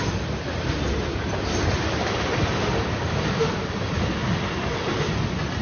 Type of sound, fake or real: real